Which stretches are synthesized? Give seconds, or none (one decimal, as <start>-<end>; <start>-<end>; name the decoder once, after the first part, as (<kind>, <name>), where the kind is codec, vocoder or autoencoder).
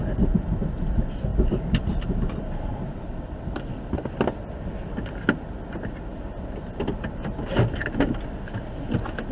1.3-3.7 (vocoder, BigVGAN v2)